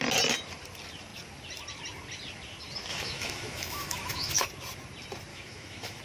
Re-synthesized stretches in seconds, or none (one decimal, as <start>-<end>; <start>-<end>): 2.9-4.4; 5.3-6.0